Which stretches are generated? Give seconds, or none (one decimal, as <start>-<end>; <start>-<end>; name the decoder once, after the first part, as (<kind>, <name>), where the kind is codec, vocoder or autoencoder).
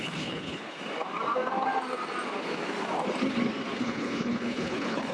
0.0-0.8 (codec, HILCodec); 3.8-5.1